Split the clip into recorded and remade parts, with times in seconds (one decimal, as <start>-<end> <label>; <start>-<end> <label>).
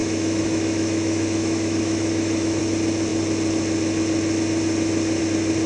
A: 0.0-2.6 remade; 2.6-5.7 recorded